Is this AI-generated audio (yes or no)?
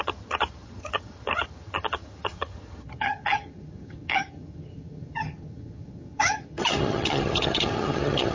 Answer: yes